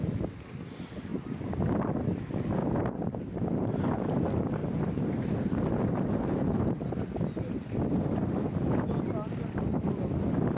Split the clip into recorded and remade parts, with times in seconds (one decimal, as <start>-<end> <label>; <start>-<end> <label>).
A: 0.0-0.5 remade; 0.5-2.6 recorded; 2.6-3.7 remade; 3.7-4.6 recorded; 4.6-6.9 remade; 6.9-10.6 recorded